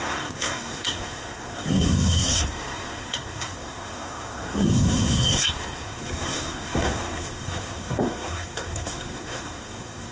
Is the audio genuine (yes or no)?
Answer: no